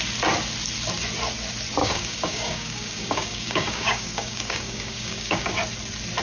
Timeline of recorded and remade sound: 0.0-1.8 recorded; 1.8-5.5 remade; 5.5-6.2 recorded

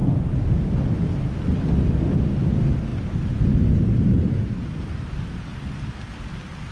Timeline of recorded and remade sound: 0.0-2.9 recorded; 2.9-5.1 remade; 5.1-6.7 recorded

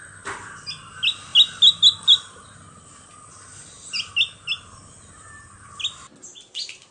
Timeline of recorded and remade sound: 0.0-6.9 recorded

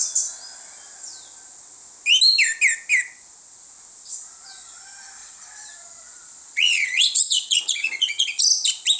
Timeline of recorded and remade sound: 0.0-5.2 recorded; 5.2-8.4 remade; 8.4-9.0 recorded

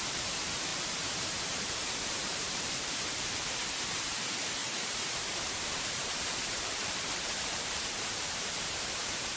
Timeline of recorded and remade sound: 0.0-9.4 remade

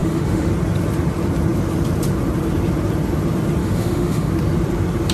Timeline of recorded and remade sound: 0.0-0.5 remade; 0.5-3.6 recorded; 3.6-4.3 remade; 4.3-5.1 recorded

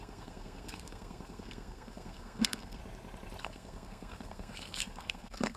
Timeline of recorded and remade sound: 0.0-2.8 remade; 2.8-3.4 recorded; 3.4-5.6 remade

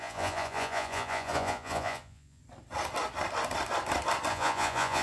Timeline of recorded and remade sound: 0.0-2.4 remade; 2.4-4.3 recorded; 4.3-5.0 remade